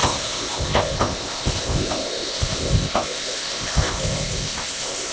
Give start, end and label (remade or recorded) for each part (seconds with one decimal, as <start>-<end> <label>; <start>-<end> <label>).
0.0-5.1 remade